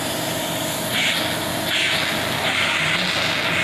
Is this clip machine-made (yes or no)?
no